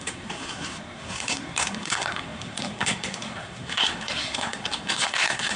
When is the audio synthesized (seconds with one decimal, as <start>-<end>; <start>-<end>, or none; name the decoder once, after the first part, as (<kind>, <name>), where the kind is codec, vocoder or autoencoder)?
0.0-5.6 (codec, SNAC)